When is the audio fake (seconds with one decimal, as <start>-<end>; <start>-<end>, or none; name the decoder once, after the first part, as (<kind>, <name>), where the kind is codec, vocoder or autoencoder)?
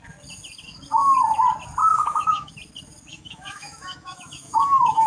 1.8-2.5 (autoencoder, DAC-VAE); 3.1-5.1